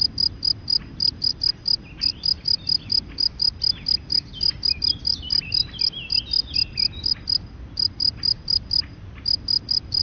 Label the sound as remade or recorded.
recorded